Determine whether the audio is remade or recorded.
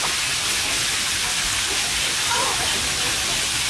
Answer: recorded